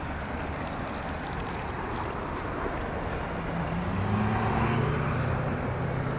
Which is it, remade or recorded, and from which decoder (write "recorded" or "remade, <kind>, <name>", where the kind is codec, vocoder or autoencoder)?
recorded